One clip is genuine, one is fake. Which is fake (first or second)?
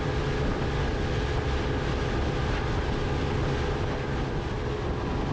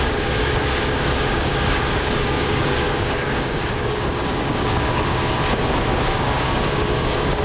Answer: second